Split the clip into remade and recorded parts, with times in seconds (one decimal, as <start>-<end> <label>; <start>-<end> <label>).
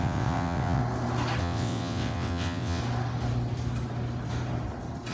0.0-0.8 remade; 0.8-1.4 recorded; 1.4-2.8 remade; 2.8-5.1 recorded